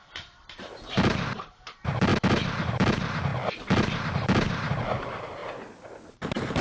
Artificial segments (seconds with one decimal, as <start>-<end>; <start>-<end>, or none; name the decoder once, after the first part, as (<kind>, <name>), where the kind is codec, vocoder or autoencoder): 0.0-2.1 (vocoder, BigVGAN v2); 2.7-5.4; 6.1-6.6